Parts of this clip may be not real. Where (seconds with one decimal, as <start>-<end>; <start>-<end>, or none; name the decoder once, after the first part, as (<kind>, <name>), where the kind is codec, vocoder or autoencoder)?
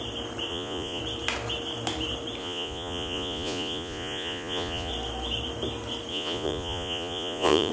0.5-1.0 (vocoder, Vocos); 2.4-4.9; 6.1-7.7